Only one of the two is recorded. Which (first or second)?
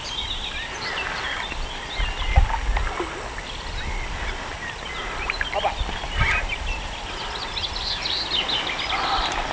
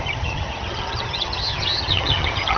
first